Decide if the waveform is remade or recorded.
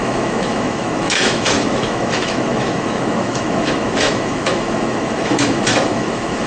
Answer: remade